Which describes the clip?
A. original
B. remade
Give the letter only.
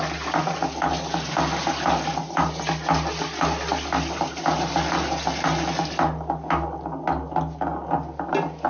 A